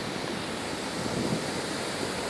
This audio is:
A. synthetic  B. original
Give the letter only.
B